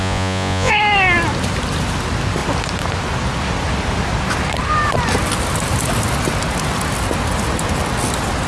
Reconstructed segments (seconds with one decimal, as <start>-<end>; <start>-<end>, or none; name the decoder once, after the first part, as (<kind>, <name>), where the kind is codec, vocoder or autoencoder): 0.0-0.7 (vocoder, Vocos)